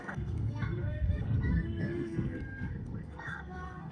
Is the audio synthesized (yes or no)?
yes